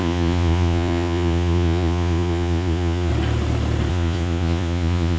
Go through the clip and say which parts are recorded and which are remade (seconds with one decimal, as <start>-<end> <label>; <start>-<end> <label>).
0.0-3.1 remade; 3.1-3.9 recorded; 3.9-5.2 remade